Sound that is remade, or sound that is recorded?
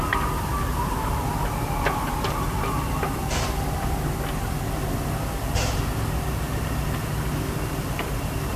recorded